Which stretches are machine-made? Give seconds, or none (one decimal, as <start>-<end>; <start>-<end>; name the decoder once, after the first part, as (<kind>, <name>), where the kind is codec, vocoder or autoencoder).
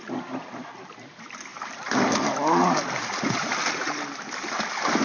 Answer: 1.5-2.1 (vocoder, BigVGAN v2)